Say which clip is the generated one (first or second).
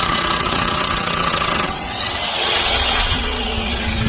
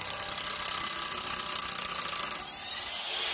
first